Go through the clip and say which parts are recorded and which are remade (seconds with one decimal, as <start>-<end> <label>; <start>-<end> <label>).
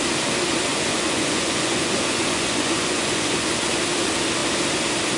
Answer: 0.0-0.7 recorded; 0.7-3.8 remade; 3.8-5.2 recorded